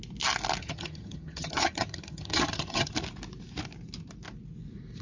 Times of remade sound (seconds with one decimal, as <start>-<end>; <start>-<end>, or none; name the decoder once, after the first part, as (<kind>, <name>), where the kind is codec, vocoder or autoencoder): 0.6-2.9 (vocoder, HiFi-GAN)